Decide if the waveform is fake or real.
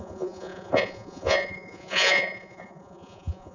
fake